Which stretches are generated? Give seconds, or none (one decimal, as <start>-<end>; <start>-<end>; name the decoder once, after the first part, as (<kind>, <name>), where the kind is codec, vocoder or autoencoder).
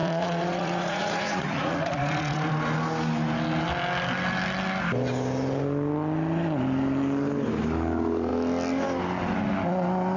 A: 0.0-2.5 (vocoder, Vocos)